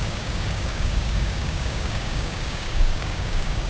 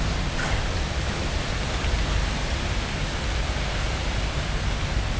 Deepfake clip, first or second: first